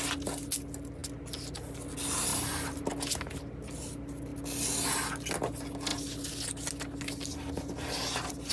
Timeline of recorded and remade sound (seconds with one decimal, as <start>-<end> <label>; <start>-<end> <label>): 0.0-2.3 recorded; 2.3-2.9 remade; 2.9-8.5 recorded